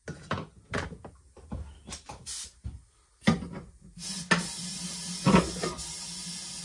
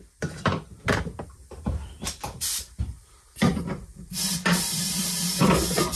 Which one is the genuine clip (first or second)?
first